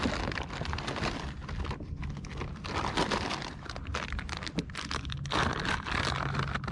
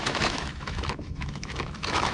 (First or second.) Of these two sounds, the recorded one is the first